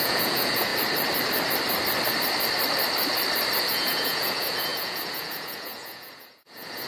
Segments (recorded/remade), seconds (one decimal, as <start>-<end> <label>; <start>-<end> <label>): 0.0-0.7 remade; 0.7-3.6 recorded; 3.6-6.9 remade